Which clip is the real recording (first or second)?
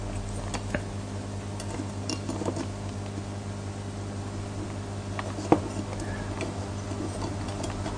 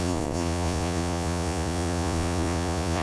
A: first